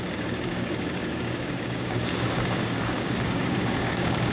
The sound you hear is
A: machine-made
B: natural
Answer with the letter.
A